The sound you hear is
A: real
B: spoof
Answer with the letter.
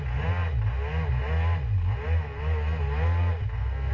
A